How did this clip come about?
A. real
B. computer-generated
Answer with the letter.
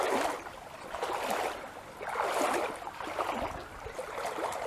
A